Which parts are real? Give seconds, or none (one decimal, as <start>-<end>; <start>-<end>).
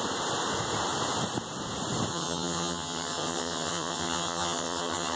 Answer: 0.0-2.1